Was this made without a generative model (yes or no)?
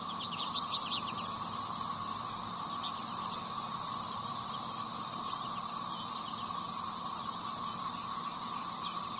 yes